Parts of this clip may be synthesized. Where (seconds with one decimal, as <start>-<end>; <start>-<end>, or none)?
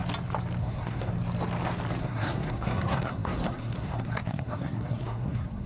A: 0.6-1.1; 2.0-5.7